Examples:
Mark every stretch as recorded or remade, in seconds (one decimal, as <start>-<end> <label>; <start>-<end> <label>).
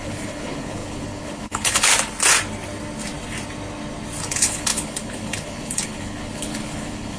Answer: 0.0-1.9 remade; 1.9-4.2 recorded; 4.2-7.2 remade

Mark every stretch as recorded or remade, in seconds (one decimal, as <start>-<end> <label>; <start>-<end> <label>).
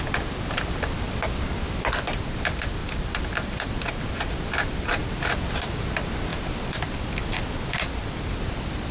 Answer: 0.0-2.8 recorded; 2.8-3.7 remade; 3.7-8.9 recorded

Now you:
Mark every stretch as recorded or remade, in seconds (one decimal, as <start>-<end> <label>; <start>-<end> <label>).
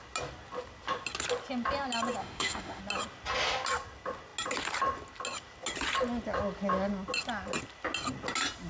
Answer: 0.0-2.2 recorded; 2.2-2.8 remade; 2.8-8.7 recorded